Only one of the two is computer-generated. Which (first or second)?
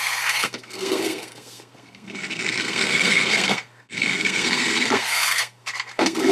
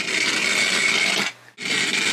first